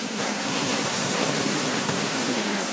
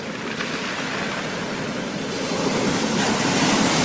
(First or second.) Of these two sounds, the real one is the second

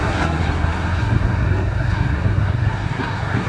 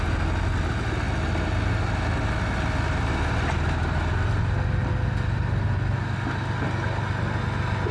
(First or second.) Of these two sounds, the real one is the second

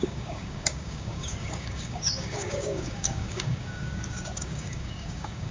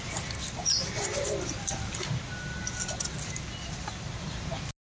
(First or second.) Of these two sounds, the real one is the second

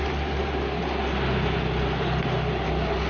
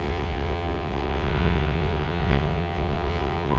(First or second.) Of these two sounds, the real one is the first